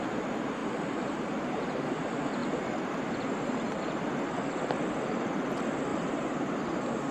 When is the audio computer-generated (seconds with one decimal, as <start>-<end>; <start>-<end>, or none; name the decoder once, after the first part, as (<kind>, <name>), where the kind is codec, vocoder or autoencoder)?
0.6-1.9 (vocoder, BigVGAN v2); 5.9-6.5